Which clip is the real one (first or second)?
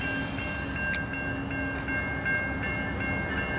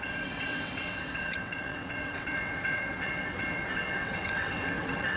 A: first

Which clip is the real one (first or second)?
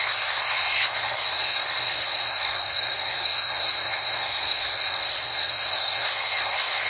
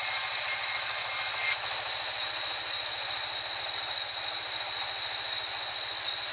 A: second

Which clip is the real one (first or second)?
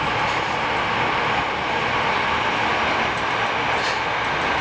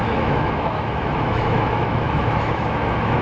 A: first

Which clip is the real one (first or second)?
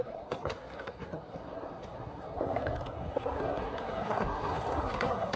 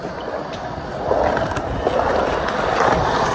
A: second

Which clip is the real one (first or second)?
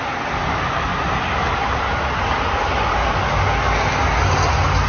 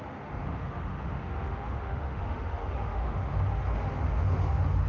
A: first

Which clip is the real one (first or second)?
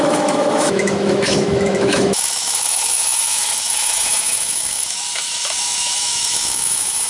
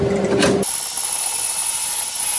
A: second